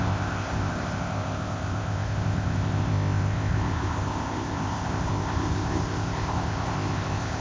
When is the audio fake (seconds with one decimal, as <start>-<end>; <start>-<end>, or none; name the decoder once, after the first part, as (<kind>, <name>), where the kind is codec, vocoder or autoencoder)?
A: 0.0-7.4 (codec, ZipCodec)